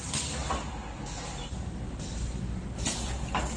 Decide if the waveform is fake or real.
real